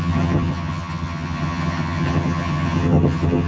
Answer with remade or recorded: remade